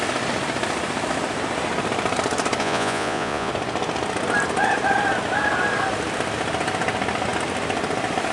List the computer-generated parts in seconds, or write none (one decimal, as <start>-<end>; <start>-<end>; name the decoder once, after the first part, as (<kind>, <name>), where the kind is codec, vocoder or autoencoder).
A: 2.6-3.5 (vocoder, Vocos)